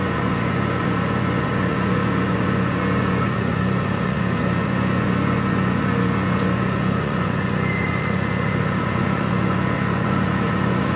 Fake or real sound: fake